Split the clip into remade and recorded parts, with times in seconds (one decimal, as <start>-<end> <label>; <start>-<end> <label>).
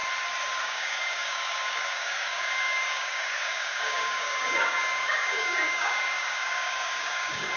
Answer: 0.0-0.6 recorded; 0.6-7.6 remade